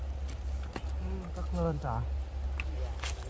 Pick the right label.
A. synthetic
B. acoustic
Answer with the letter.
B